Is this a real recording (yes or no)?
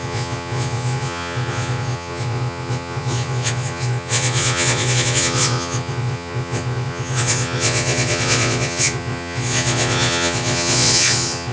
no